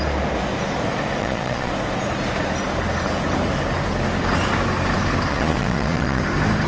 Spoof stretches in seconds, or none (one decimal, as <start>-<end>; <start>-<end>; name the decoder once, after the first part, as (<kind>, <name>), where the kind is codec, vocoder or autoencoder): 1.2-1.7 (vocoder, Vocos); 5.3-6.2